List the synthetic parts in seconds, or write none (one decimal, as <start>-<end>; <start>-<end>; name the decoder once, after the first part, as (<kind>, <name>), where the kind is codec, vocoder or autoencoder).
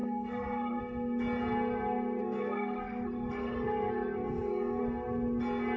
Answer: 0.0-0.8 (codec, SNAC); 2.2-4.8